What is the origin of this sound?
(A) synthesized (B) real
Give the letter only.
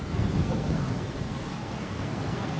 A